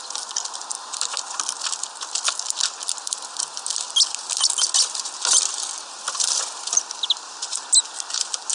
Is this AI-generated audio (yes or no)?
no